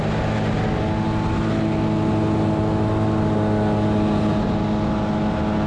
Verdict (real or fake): real